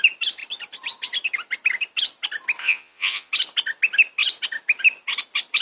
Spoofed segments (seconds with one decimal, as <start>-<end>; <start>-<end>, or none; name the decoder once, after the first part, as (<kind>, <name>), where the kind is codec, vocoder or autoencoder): 2.6-3.3 (vocoder, Vocos)